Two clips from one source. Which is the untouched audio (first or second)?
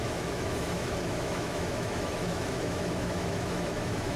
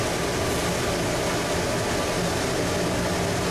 second